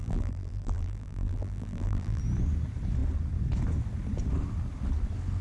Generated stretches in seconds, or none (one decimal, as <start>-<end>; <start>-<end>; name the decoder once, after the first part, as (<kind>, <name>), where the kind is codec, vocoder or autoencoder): 0.0-2.2 (vocoder, BigVGAN v2)